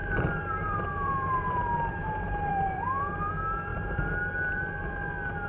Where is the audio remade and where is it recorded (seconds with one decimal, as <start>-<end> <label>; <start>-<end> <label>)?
0.0-3.3 remade; 3.3-3.7 recorded; 3.7-4.9 remade; 4.9-5.5 recorded